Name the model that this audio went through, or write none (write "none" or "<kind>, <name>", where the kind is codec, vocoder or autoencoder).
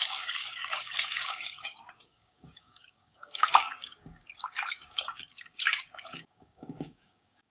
codec, DAC